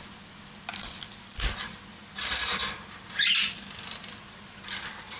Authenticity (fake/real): real